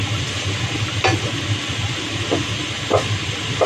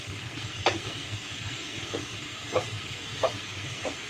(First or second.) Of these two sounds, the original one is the first